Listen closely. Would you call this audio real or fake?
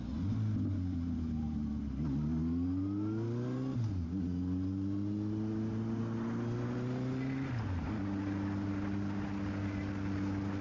real